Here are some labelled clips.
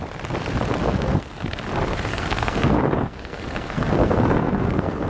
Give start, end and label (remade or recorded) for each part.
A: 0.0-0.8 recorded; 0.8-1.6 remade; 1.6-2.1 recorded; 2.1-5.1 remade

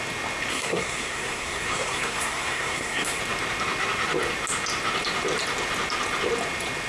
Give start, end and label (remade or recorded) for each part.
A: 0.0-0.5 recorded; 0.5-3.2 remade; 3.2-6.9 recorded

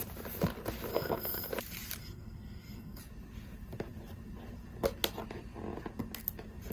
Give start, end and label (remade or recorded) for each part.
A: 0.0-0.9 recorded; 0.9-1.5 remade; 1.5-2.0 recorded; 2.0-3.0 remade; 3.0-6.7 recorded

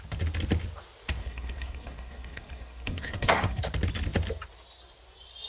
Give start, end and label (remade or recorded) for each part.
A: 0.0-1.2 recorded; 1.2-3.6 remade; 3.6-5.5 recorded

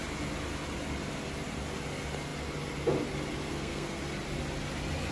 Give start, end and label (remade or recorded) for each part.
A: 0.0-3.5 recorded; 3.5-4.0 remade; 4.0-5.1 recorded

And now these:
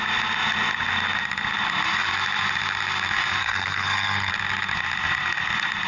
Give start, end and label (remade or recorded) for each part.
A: 0.0-3.4 recorded; 3.4-4.3 remade; 4.3-5.9 recorded